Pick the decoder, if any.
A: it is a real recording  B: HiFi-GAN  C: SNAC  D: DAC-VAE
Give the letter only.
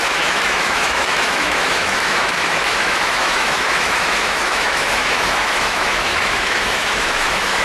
D